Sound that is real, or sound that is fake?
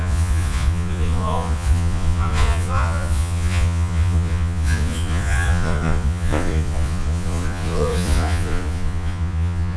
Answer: fake